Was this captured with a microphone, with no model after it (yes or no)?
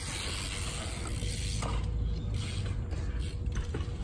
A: yes